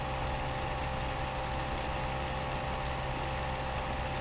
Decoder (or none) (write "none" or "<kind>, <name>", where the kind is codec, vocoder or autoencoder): none